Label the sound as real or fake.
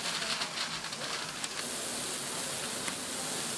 real